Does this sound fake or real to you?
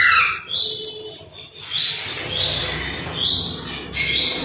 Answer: real